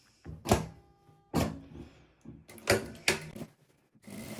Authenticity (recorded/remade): recorded